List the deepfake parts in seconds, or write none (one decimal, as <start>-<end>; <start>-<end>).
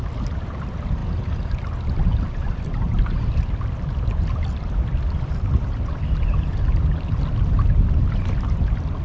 none